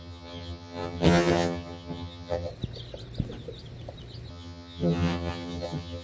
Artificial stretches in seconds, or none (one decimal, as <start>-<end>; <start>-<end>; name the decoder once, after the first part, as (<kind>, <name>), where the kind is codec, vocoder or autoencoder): 0.0-2.5 (vocoder, HiFi-GAN); 4.3-6.0